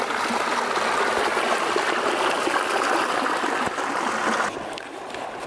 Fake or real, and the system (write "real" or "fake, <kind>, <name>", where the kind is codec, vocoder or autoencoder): real